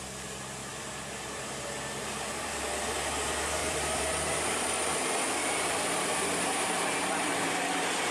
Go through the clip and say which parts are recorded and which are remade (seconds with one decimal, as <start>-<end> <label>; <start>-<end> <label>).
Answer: 0.0-0.6 recorded; 0.6-2.5 remade; 2.5-3.6 recorded; 3.6-5.0 remade; 5.0-5.4 recorded; 5.4-7.6 remade; 7.6-8.1 recorded

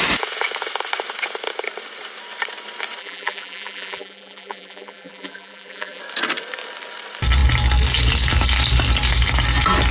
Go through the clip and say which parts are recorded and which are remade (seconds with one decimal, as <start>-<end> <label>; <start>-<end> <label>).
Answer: 0.0-3.0 recorded; 3.0-6.0 remade; 6.0-9.9 recorded

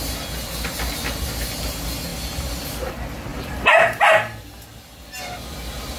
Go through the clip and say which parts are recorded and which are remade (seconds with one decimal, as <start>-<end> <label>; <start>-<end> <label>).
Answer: 0.0-3.3 recorded; 3.3-4.0 remade; 4.0-6.0 recorded

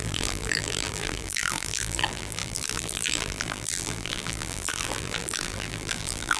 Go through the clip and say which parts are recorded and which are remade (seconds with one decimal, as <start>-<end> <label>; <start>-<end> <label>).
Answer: 0.0-6.4 remade

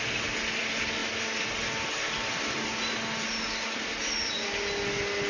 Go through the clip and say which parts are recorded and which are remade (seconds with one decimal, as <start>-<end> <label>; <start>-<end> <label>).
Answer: 0.0-5.3 recorded

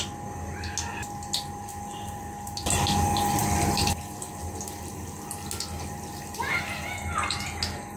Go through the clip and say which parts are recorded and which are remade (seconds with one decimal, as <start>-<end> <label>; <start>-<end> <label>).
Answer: 0.0-1.7 recorded; 1.7-2.2 remade; 2.2-3.4 recorded; 3.4-3.9 remade; 3.9-8.0 recorded

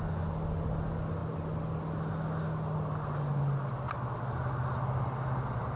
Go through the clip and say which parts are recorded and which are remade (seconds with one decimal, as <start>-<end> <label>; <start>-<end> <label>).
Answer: 0.0-5.8 recorded